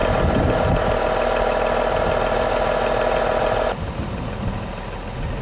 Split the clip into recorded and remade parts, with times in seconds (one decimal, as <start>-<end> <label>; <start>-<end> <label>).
0.0-5.4 recorded